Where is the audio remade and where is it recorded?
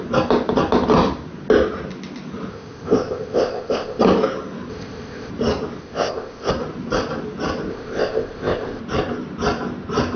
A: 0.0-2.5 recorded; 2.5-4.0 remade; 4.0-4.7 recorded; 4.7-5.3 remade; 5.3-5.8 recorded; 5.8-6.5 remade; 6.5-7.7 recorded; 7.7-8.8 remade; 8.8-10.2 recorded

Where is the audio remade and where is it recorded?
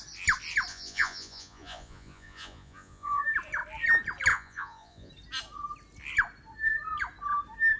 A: 0.0-0.7 recorded; 0.7-3.2 remade; 3.2-4.3 recorded; 4.3-5.1 remade; 5.1-7.8 recorded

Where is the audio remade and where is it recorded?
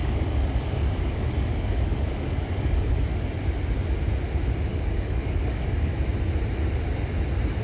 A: 0.0-2.9 remade; 2.9-4.7 recorded; 4.7-5.9 remade; 5.9-7.6 recorded